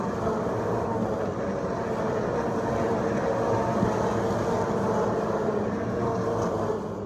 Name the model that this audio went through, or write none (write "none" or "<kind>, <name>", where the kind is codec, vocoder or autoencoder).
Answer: none